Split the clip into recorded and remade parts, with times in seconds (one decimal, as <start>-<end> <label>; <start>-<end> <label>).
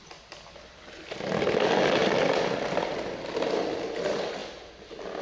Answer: 0.0-5.2 recorded